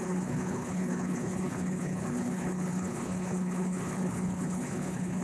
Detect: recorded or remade remade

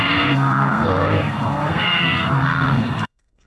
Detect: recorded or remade remade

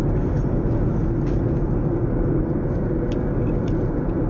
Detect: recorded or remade recorded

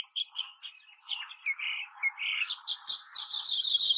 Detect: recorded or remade recorded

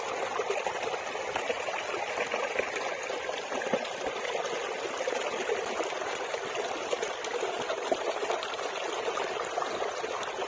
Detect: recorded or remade recorded